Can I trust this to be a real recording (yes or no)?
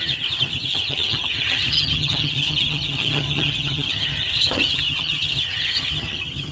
no